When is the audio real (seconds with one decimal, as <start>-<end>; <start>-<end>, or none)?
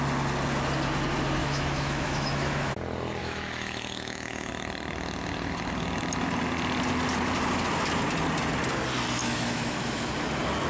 0.0-1.4; 2.7-3.2; 4.5-9.2; 10.1-10.7